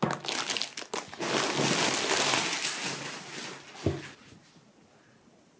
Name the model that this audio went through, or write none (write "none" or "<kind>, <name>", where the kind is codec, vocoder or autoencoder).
none